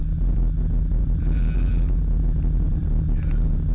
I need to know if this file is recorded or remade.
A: recorded